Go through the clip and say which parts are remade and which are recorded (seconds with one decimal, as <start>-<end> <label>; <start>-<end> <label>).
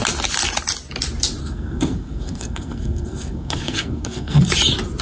0.0-1.4 recorded; 1.4-4.4 remade; 4.4-5.0 recorded